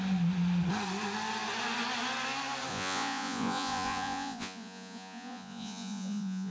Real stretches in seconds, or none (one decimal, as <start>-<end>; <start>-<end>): 0.0-2.7

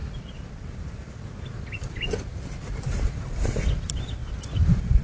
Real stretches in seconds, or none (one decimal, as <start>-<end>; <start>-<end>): 3.0-4.2